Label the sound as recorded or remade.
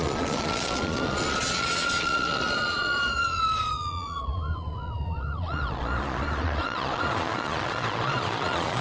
remade